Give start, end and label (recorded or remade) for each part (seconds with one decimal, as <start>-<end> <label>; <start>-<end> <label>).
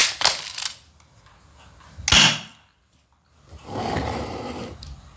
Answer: 0.0-3.1 recorded; 3.1-5.2 remade